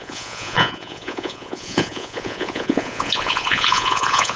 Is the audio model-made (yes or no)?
yes